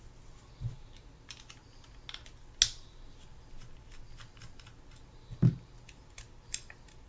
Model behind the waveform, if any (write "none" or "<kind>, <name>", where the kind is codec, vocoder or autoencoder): none